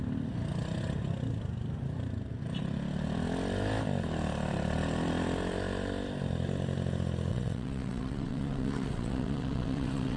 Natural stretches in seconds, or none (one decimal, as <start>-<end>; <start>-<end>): 0.0-7.3